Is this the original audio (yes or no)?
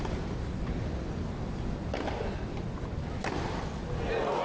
yes